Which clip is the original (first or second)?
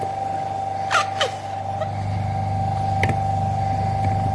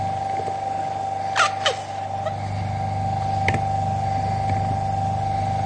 second